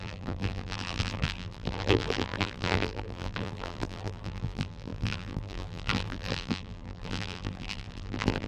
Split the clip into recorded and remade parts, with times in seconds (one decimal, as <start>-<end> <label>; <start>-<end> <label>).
0.0-8.5 remade